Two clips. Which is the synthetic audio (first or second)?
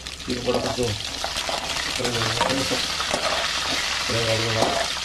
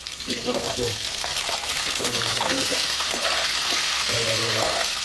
second